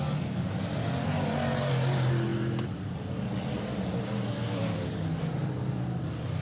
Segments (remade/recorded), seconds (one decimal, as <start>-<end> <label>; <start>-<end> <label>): 0.0-6.4 recorded